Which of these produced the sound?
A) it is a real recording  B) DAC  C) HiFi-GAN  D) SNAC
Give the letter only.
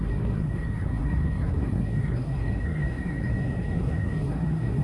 D